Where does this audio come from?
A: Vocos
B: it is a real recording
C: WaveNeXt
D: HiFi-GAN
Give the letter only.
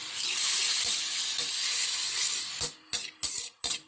B